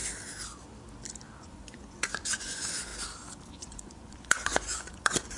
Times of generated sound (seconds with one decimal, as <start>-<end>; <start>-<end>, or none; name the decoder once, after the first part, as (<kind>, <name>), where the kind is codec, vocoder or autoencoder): 1.4-2.9 (vocoder, Vocos); 3.5-5.4